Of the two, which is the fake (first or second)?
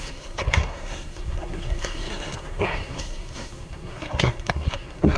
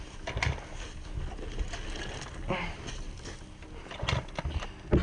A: first